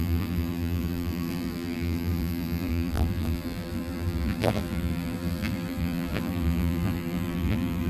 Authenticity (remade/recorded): remade